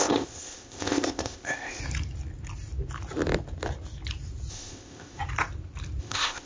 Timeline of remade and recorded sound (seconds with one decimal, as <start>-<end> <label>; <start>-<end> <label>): 0.0-1.8 remade; 1.8-4.5 recorded; 4.5-5.2 remade; 5.2-6.0 recorded; 6.0-6.5 remade